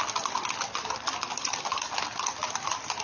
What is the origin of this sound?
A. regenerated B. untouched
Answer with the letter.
B